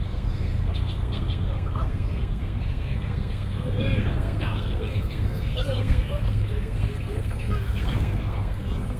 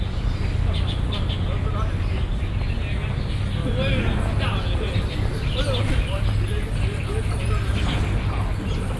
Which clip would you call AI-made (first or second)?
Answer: first